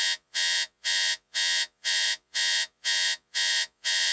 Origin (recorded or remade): remade